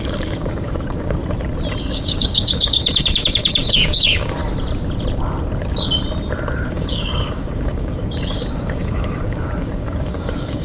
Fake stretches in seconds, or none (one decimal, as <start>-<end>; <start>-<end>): 0.0-1.2; 1.8-4.4; 6.7-10.6